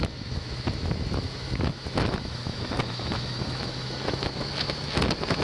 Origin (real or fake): fake